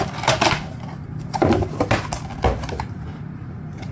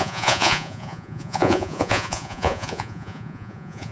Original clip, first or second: first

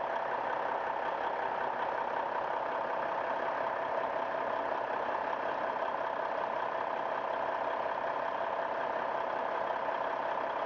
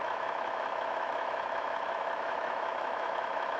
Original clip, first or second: first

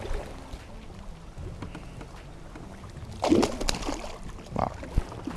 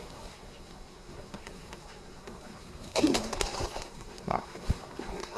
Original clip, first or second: first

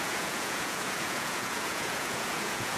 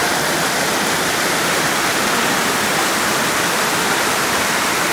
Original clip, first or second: second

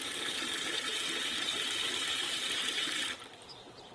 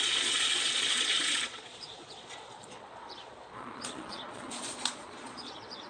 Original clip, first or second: first